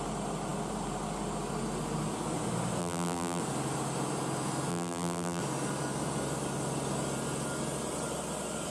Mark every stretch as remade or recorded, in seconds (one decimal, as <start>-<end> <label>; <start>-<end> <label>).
0.0-2.8 recorded; 2.8-3.4 remade; 3.4-4.7 recorded; 4.7-5.4 remade; 5.4-8.7 recorded